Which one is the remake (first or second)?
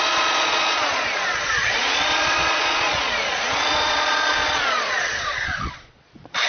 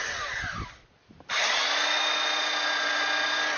first